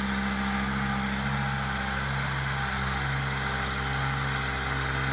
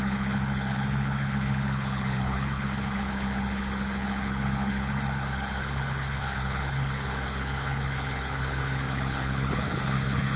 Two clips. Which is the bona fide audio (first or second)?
first